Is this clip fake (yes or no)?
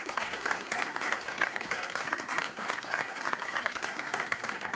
yes